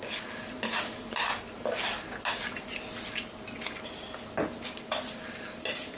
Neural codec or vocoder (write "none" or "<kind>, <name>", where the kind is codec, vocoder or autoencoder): none